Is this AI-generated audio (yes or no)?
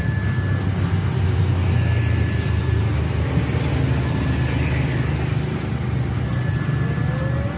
no